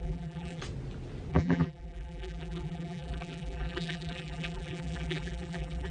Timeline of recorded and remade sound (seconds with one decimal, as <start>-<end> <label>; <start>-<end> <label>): 0.0-0.6 remade; 0.6-1.3 recorded; 1.3-5.9 remade